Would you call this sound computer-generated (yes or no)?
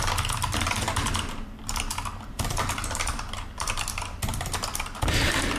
yes